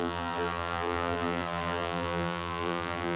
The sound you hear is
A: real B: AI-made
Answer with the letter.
B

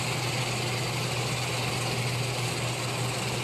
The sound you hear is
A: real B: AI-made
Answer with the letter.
A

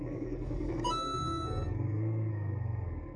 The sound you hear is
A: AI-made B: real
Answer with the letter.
A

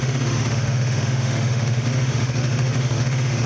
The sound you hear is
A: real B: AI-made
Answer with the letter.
B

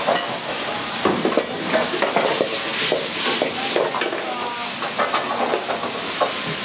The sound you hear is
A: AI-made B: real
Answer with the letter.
B